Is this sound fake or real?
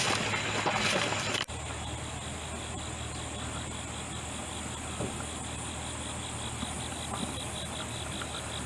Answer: real